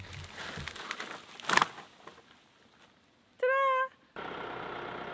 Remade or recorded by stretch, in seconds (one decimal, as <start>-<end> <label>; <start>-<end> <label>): 0.0-5.1 recorded